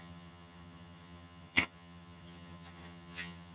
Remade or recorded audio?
remade